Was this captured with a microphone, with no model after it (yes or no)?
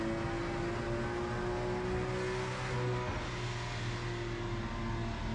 yes